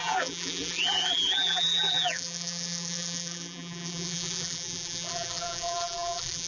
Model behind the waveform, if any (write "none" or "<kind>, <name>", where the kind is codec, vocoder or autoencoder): vocoder, BigVGAN v2